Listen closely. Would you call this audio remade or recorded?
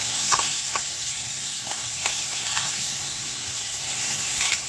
remade